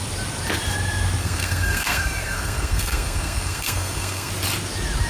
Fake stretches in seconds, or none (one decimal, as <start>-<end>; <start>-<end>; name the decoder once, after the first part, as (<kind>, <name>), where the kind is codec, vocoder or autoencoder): 1.2-4.3 (codec, SNAC)